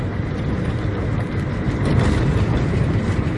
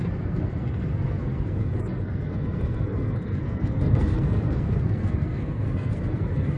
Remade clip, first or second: second